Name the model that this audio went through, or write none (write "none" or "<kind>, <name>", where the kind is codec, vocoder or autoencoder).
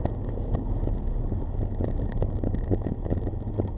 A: none